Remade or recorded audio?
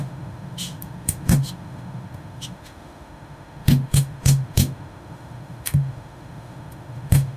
remade